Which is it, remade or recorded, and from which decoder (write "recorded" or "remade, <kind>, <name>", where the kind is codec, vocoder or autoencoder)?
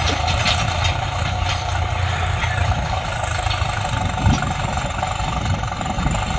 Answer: remade, vocoder, BigVGAN v2